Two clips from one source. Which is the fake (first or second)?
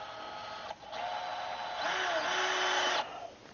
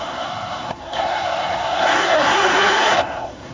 second